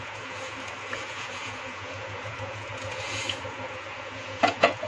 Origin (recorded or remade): remade